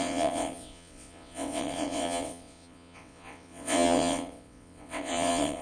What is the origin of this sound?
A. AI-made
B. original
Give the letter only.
A